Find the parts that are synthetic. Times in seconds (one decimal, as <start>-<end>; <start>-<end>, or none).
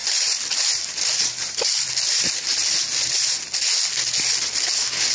none